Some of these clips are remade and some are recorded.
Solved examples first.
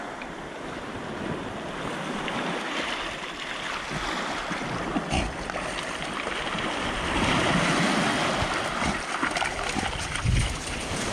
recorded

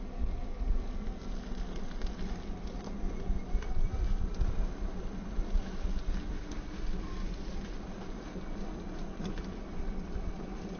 recorded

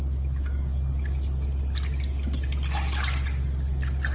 recorded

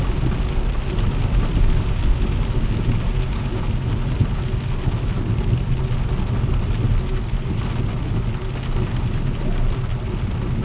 recorded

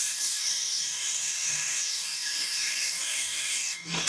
remade